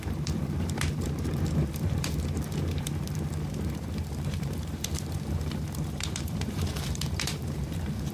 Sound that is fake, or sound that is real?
fake